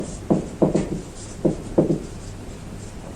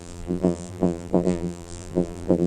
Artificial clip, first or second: second